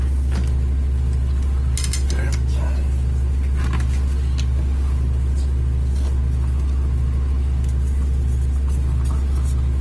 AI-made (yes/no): no